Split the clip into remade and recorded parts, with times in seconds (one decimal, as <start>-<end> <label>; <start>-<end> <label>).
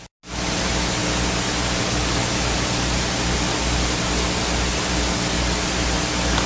0.0-6.5 recorded